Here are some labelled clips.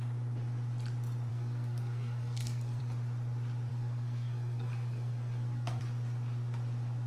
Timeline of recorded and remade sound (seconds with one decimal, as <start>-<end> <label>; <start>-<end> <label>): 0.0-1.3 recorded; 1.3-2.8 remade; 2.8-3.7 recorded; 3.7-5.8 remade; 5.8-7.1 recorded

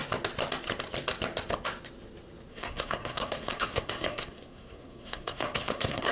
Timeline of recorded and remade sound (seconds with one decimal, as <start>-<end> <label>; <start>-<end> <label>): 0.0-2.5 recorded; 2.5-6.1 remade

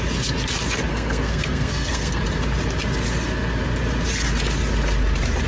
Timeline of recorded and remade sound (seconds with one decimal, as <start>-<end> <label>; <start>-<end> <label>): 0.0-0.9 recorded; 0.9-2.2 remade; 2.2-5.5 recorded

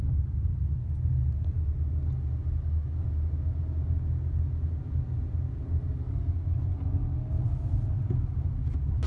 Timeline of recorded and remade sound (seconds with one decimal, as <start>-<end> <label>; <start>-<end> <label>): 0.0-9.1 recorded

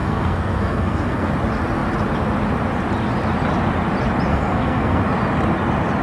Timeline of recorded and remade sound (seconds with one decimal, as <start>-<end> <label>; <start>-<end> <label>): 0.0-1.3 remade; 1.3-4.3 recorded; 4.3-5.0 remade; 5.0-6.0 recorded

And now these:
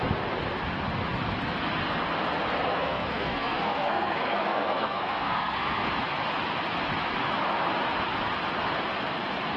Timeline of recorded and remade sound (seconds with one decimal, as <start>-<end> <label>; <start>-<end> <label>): 0.0-2.7 recorded; 2.7-5.9 remade; 5.9-9.6 recorded